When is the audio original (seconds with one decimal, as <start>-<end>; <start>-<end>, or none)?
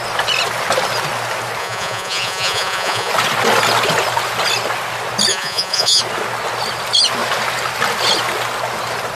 0.0-1.6; 3.1-5.3; 6.0-9.1